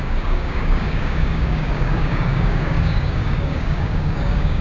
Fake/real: fake